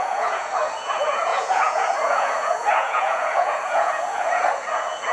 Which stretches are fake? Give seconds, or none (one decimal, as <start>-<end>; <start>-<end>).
0.0-5.1